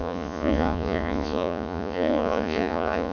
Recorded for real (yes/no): no